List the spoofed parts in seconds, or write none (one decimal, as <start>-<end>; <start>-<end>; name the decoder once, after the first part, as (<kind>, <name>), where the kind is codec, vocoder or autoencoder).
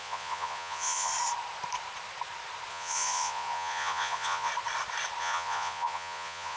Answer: 0.0-1.1 (vocoder, Vocos); 2.7-4.5; 5.2-6.6